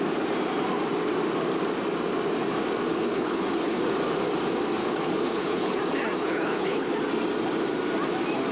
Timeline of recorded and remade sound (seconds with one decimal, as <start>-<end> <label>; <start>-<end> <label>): 0.0-2.9 recorded; 2.9-3.8 remade; 3.8-4.8 recorded; 4.8-5.8 remade; 5.8-6.2 recorded; 6.2-6.9 remade; 6.9-8.5 recorded